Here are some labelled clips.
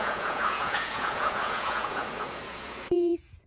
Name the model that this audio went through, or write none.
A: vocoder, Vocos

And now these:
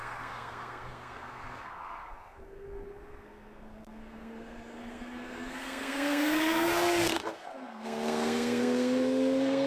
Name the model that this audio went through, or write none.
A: codec, SNAC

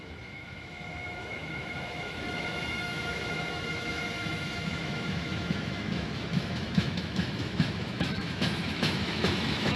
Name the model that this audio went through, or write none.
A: autoencoder, DAC-VAE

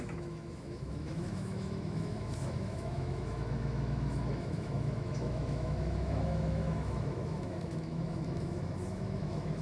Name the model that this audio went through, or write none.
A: autoencoder, DAC-VAE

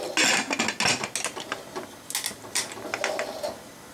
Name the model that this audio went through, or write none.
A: none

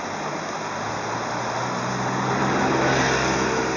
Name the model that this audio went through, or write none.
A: none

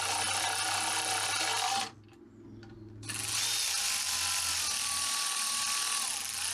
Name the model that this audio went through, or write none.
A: none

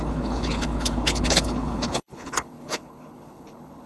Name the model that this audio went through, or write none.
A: codec, HILCodec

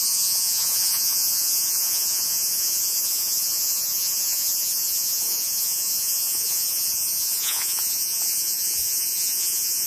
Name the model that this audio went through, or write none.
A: vocoder, Vocos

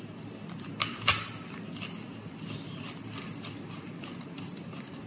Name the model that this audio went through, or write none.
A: none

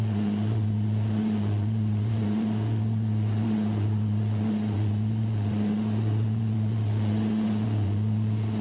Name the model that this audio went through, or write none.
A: vocoder, Vocos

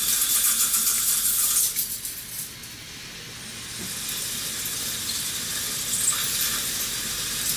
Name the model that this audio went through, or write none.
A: none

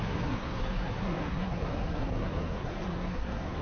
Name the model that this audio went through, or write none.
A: codec, SNAC